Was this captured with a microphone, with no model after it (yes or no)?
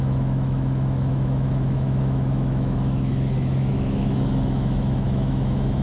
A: no